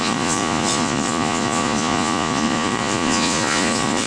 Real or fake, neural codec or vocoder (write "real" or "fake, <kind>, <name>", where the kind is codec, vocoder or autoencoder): fake, vocoder, Vocos